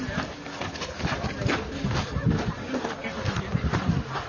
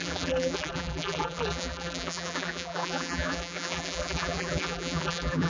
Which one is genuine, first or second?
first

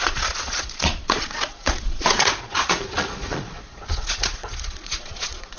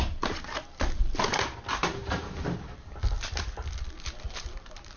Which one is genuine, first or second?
second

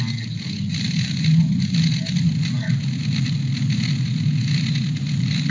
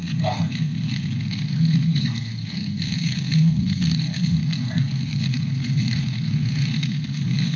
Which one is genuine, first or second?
first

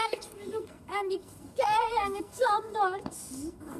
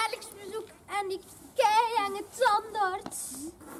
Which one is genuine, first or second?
second